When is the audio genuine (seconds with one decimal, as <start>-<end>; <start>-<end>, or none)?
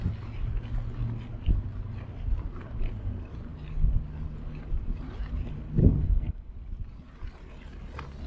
0.0-5.8; 6.5-8.3